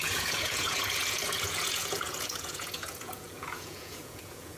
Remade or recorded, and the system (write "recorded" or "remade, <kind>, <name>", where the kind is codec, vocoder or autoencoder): remade, vocoder, Vocos